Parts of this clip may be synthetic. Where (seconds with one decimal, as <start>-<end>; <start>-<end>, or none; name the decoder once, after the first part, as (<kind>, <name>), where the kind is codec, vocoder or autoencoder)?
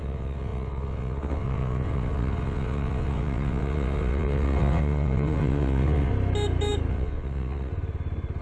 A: 0.0-6.1 (vocoder, WaveNeXt); 6.9-7.7